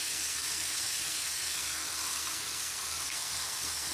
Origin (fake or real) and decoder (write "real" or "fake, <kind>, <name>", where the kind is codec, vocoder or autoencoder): fake, codec, SNAC